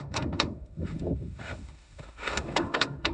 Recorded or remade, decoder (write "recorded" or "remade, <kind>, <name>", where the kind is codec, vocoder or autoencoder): remade, autoencoder, DAC-VAE